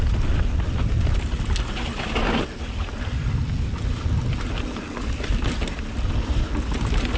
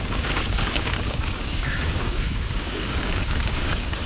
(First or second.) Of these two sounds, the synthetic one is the second